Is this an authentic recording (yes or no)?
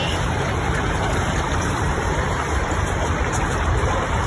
no